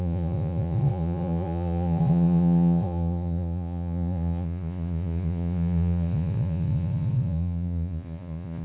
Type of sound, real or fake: fake